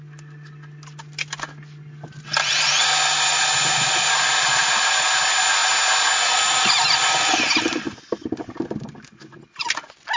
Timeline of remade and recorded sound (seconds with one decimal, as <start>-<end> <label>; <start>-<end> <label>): 0.0-10.2 recorded

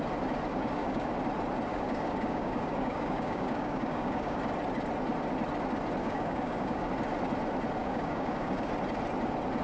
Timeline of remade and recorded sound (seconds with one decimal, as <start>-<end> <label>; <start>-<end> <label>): 0.0-0.5 recorded; 0.5-1.1 remade; 1.1-1.7 recorded; 1.7-4.4 remade; 4.4-6.0 recorded; 6.0-6.9 remade; 6.9-7.8 recorded; 7.8-8.7 remade; 8.7-9.6 recorded